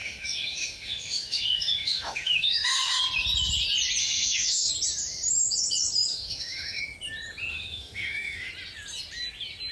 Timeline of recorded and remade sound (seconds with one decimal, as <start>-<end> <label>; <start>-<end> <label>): 0.0-3.0 remade; 3.0-4.0 recorded; 4.0-4.7 remade; 4.7-6.1 recorded; 6.1-6.8 remade; 6.8-7.5 recorded; 7.5-8.5 remade; 8.5-9.7 recorded